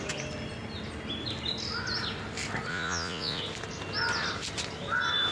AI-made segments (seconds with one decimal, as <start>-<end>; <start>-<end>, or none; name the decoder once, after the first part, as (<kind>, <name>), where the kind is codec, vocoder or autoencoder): 2.7-3.4 (vocoder, Vocos)